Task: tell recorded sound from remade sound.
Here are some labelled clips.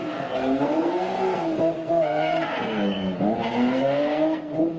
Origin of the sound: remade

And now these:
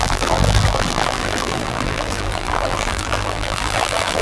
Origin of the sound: remade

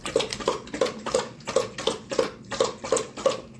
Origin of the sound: recorded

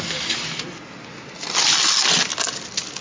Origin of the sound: recorded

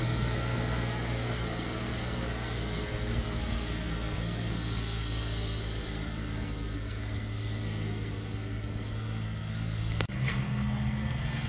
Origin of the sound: remade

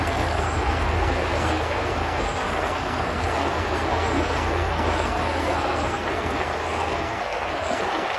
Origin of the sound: remade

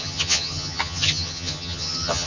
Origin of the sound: remade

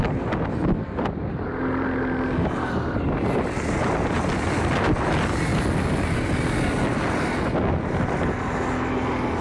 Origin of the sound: recorded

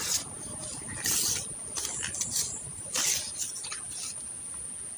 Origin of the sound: recorded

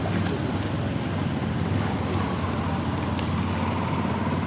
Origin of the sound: recorded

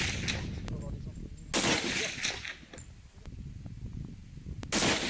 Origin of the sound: recorded